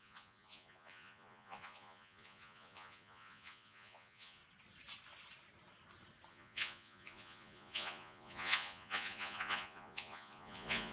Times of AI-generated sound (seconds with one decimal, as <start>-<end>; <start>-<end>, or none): 0.0-4.4; 6.3-10.9